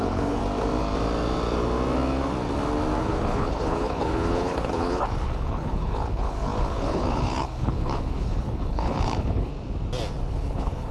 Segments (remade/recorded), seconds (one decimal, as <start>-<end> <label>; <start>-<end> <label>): 0.0-0.4 remade; 0.4-3.0 recorded; 3.0-9.5 remade; 9.5-10.3 recorded; 10.3-10.9 remade